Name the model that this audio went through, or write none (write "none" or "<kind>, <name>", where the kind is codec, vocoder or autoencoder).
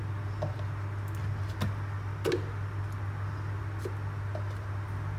none